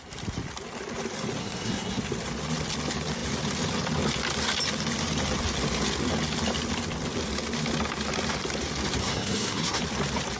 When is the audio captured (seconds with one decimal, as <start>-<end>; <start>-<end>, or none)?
0.0-1.4; 2.0-9.0; 9.8-10.4